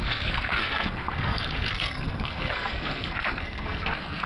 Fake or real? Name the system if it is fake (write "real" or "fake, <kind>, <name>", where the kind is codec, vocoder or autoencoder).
fake, codec, SNAC